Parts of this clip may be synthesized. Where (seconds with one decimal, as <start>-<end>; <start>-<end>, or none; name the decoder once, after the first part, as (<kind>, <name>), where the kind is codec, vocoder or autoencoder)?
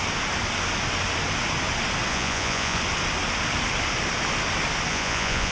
2.1-2.8 (vocoder, Vocos); 4.9-5.5